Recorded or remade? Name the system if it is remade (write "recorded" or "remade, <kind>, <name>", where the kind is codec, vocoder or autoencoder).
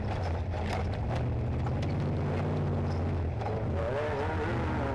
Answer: recorded